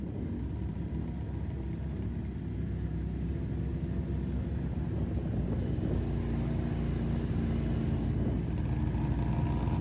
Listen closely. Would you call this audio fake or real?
real